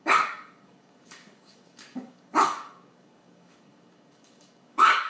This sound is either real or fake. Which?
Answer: fake